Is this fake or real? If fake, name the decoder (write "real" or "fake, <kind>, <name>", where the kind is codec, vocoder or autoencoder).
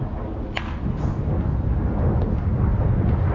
real